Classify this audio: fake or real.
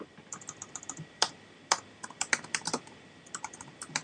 fake